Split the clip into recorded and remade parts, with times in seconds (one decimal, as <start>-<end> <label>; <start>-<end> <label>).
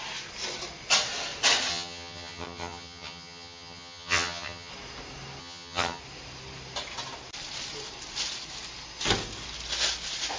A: 0.0-1.7 recorded; 1.7-4.7 remade; 4.7-5.4 recorded; 5.4-6.0 remade; 6.0-10.4 recorded